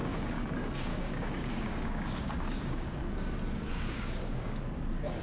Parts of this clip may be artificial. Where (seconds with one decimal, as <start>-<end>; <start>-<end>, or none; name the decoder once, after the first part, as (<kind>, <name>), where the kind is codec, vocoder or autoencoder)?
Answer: 0.0-0.5 (codec, DAC); 0.9-3.0; 3.7-4.6